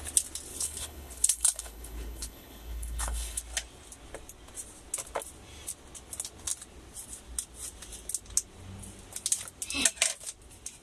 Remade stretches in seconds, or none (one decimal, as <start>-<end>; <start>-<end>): 0.5-3.4